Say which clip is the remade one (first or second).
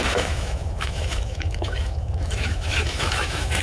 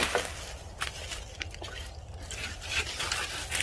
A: first